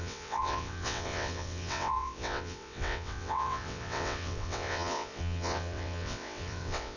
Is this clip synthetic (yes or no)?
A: yes